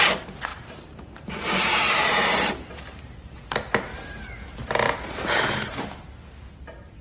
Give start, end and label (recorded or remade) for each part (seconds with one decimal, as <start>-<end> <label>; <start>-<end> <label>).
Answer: 0.0-0.5 recorded; 0.5-4.2 remade; 4.2-7.0 recorded